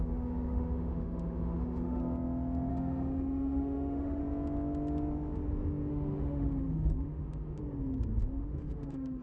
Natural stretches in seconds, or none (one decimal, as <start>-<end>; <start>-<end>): 2.0-2.7; 4.2-5.9; 7.6-8.2